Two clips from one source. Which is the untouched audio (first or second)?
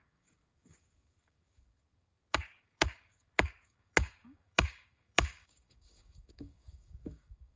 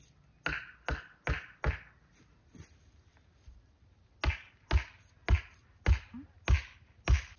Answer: second